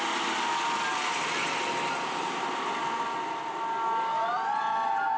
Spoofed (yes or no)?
no